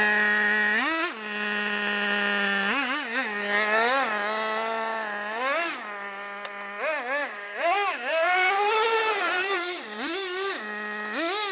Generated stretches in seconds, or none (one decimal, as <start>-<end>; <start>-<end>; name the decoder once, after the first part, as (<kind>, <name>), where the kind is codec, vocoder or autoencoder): 7.2-10.6 (vocoder, BigVGAN v2)